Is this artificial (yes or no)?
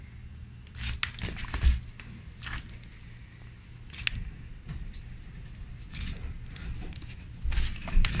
no